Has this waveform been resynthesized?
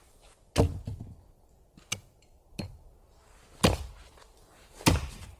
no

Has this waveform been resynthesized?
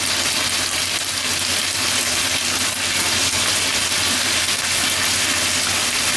no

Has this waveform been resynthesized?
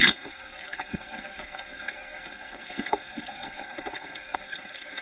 yes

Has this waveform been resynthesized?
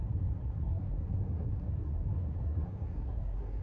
yes